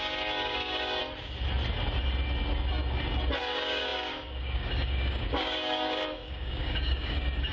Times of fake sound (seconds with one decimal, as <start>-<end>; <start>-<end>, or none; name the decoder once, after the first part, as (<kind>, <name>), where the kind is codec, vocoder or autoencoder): 0.0-1.0 (codec, DAC); 3.4-7.5